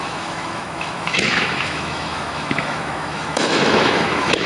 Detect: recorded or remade remade